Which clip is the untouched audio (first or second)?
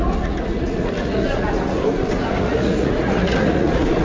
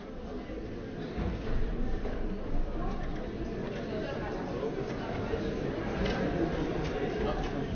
second